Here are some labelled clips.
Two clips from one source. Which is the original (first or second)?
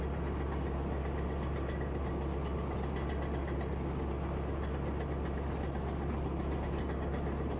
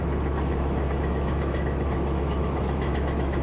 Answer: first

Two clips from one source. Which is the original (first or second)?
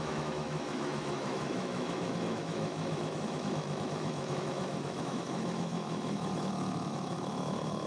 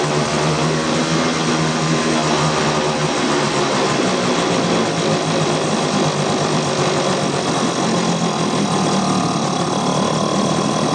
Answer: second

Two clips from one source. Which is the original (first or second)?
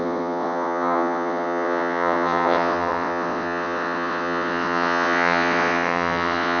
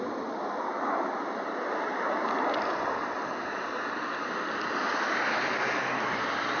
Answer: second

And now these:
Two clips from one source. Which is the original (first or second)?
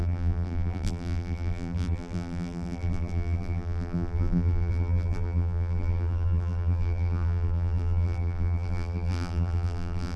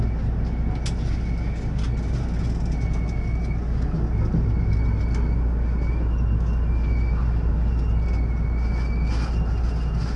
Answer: second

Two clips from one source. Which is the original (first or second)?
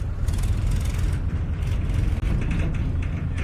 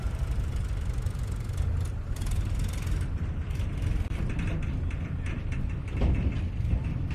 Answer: first